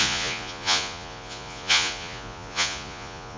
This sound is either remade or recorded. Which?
remade